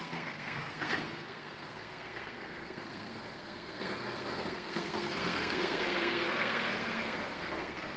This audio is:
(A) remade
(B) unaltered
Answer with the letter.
A